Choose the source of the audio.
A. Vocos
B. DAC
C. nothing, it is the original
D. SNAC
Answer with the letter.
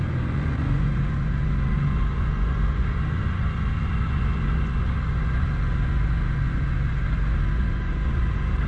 A